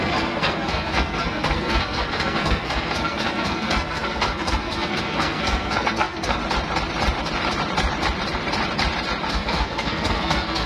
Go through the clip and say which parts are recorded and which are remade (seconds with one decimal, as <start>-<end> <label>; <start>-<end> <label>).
0.0-6.4 remade; 6.4-9.3 recorded; 9.3-10.7 remade